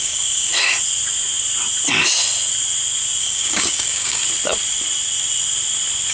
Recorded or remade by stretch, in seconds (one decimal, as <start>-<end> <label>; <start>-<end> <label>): 0.0-0.5 remade; 0.5-3.2 recorded; 3.2-4.2 remade; 4.2-6.1 recorded